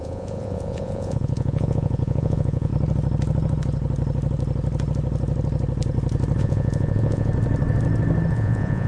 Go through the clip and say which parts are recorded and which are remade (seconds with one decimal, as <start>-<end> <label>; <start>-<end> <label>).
0.0-2.7 remade; 2.7-6.4 recorded; 6.4-7.3 remade; 7.3-8.3 recorded; 8.3-8.9 remade